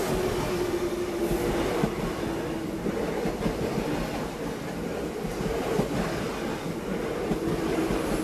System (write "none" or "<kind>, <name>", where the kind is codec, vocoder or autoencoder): none